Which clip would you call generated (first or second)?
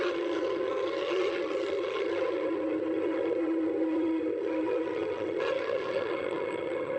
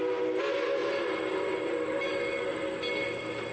first